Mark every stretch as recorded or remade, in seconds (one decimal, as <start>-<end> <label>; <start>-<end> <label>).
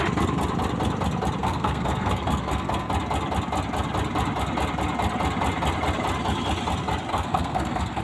0.0-1.4 recorded; 1.4-2.9 remade; 2.9-7.1 recorded; 7.1-8.0 remade